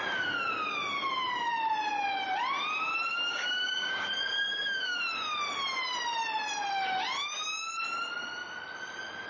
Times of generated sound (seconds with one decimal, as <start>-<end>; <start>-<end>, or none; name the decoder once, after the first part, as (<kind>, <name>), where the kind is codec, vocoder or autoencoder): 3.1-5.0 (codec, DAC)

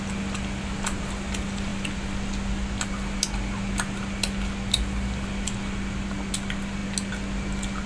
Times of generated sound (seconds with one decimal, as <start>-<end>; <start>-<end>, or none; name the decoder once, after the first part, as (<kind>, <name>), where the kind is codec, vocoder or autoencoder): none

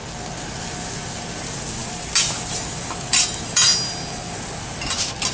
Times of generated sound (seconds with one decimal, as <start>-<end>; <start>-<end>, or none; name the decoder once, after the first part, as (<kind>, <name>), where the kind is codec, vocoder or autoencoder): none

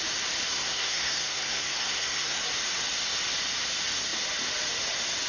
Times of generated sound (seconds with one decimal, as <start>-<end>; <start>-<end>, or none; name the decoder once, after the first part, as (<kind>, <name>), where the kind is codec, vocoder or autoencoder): 0.5-2.4 (codec, SNAC)